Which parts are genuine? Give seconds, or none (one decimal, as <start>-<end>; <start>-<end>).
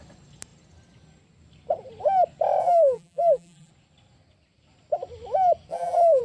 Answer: 0.0-2.6; 3.7-5.7